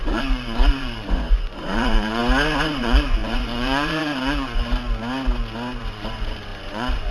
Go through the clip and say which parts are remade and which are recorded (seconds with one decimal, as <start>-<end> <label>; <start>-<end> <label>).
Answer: 0.0-2.2 remade; 2.2-2.8 recorded; 2.8-4.8 remade; 4.8-5.8 recorded; 5.8-7.1 remade